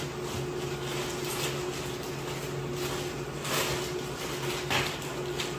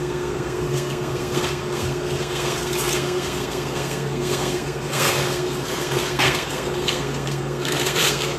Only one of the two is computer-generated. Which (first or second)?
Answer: second